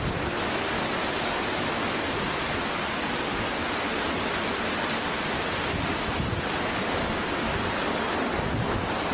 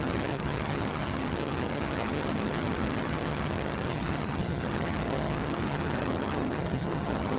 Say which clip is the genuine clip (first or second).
first